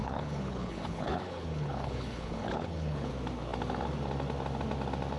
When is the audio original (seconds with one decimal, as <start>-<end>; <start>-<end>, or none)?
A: 3.1-5.2